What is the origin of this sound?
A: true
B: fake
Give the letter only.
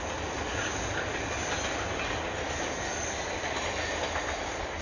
A